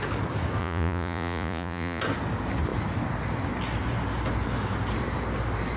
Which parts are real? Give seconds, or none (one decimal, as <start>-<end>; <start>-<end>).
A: 0.0-0.6; 2.0-5.8

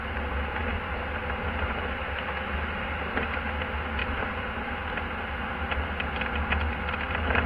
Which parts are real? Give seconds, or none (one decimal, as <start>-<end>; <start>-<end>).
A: 0.0-4.0; 4.9-7.5

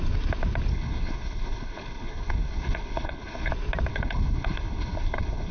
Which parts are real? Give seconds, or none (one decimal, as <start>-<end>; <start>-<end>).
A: 0.0-0.7; 3.5-3.9

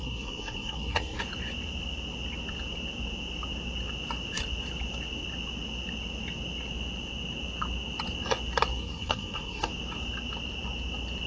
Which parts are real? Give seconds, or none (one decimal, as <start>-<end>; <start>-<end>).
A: 1.2-8.7; 9.7-11.3

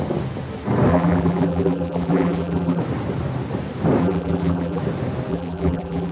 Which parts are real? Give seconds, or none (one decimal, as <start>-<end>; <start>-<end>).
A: 0.0-0.9; 2.8-4.0; 4.8-5.3

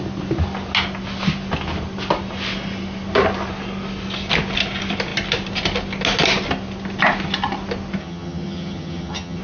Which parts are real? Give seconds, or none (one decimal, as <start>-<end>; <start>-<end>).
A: 0.0-8.0

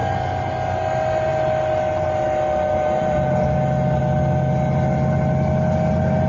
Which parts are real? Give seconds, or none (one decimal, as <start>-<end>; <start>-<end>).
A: 0.0-6.3

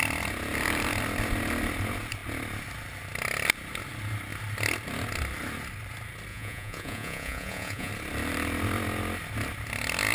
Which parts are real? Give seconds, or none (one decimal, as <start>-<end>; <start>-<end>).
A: 0.0-6.3; 7.9-10.1